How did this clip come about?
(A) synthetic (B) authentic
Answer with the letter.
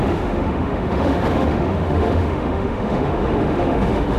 A